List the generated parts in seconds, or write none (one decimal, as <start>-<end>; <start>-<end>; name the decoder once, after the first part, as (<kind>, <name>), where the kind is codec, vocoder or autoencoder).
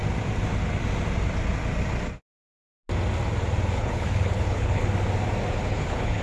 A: 3.7-4.8 (codec, HILCodec); 5.5-6.2